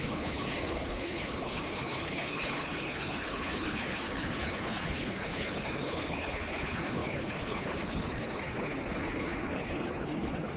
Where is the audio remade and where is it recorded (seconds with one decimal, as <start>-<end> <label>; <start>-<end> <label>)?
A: 0.0-10.6 remade